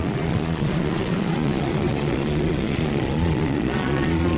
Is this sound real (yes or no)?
no